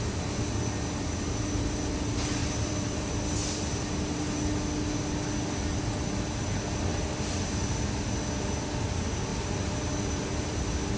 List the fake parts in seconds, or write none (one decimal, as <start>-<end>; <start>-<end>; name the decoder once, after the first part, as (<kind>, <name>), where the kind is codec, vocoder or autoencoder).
2.4-3.1 (vocoder, BigVGAN v2); 6.9-7.9; 9.3-10.6

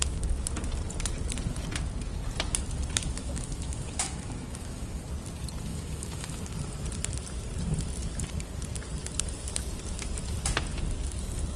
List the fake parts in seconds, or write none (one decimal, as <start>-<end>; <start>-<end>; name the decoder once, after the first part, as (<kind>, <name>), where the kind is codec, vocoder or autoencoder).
3.2-5.0 (autoencoder, DAC-VAE); 5.7-6.4

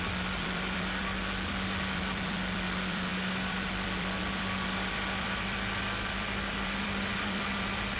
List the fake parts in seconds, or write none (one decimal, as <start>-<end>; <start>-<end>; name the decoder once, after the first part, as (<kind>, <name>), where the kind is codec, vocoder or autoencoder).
0.0-8.0 (vocoder, BigVGAN v2)